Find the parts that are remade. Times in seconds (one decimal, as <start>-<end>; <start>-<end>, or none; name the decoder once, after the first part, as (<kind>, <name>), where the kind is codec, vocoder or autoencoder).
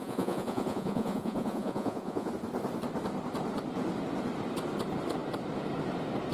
0.0-2.3 (vocoder, Vocos)